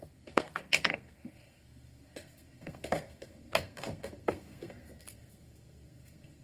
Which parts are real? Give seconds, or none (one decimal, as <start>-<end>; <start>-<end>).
none